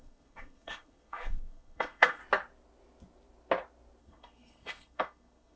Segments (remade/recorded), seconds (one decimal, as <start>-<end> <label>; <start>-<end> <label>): 0.0-2.2 remade; 2.2-4.0 recorded; 4.0-5.6 remade